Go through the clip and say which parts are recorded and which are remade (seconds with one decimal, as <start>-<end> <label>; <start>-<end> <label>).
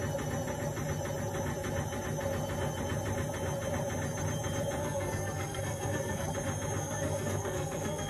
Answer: 0.0-4.8 recorded; 4.8-6.3 remade; 6.3-6.8 recorded; 6.8-8.1 remade